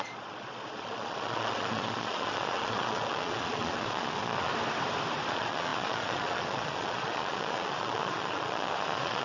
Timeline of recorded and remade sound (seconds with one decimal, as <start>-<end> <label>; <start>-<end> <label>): 0.0-4.5 remade; 4.5-5.3 recorded; 5.3-9.2 remade